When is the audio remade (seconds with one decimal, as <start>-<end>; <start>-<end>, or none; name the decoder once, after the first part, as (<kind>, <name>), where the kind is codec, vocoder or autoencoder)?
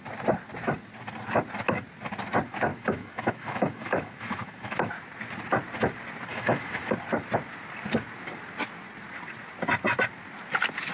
2.7-4.9 (autoencoder, DAC-VAE); 6.3-6.9